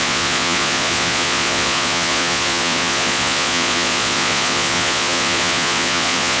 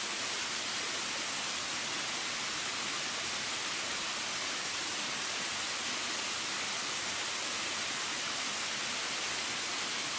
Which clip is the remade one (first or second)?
first